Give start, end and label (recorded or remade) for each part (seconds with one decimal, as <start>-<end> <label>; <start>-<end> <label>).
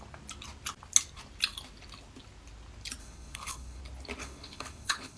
0.0-3.0 recorded; 3.0-3.8 remade; 3.8-4.2 recorded; 4.2-5.2 remade